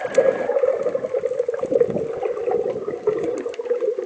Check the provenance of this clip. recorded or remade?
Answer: recorded